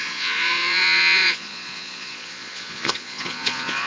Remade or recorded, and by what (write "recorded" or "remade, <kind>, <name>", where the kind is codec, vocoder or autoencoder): remade, vocoder, Vocos